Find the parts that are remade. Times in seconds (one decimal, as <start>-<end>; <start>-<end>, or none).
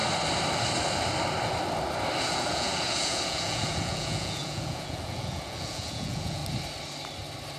2.2-6.4